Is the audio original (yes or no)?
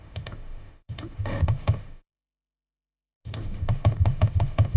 no